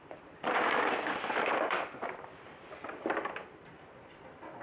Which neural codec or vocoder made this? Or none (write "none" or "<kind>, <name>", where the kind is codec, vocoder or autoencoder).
vocoder, BigVGAN v2